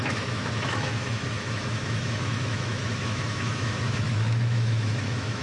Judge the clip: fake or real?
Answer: fake